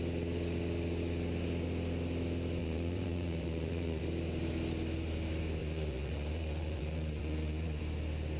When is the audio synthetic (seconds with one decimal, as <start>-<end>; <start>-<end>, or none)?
2.6-4.0; 5.6-7.8